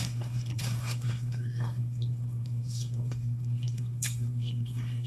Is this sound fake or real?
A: fake